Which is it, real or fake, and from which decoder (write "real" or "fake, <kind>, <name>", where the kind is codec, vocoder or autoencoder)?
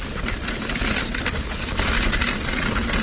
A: real